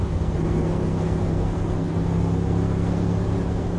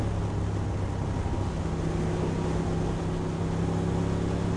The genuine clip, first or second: second